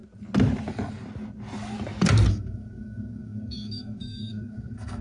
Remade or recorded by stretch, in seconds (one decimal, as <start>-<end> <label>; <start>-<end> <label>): 0.0-2.3 recorded; 2.3-5.0 remade